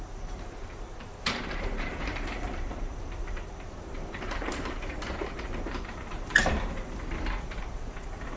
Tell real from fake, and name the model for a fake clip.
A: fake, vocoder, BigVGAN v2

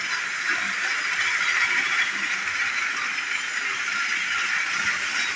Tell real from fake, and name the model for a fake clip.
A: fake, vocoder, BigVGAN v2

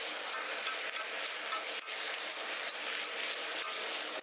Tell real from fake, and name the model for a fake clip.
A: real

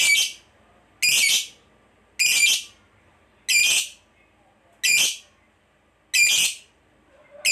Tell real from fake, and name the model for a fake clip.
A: real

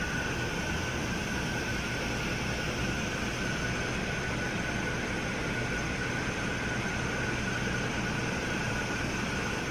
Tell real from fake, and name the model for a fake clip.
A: fake, vocoder, BigVGAN v2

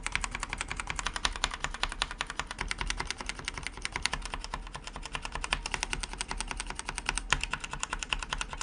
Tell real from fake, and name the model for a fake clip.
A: real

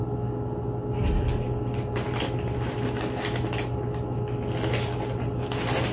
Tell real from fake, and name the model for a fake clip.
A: real